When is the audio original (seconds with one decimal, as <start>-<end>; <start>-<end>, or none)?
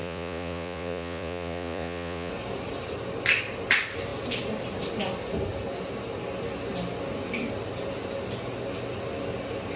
2.3-9.8